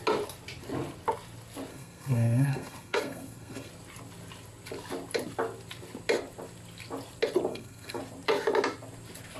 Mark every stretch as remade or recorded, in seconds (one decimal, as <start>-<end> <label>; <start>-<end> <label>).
0.0-1.7 recorded; 1.7-3.7 remade; 3.7-7.5 recorded; 7.5-8.0 remade; 8.0-9.4 recorded